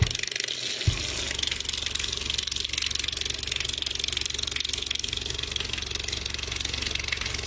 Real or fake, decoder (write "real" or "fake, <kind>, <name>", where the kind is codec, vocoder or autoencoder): real